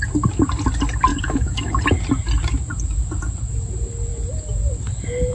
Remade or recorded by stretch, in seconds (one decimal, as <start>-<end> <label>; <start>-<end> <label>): 0.0-1.1 recorded; 1.1-1.8 remade; 1.8-5.3 recorded